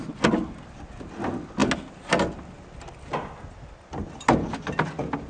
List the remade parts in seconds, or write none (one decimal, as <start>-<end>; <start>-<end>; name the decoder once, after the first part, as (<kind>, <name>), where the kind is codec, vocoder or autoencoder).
none

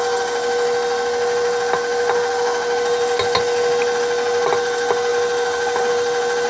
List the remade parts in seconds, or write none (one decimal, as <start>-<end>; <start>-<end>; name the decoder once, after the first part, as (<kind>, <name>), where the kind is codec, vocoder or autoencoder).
none